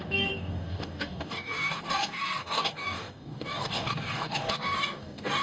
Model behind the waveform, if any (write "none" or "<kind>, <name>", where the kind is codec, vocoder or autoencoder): codec, DAC